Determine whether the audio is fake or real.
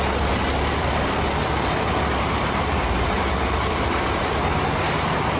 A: fake